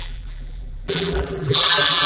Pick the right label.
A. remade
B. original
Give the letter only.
A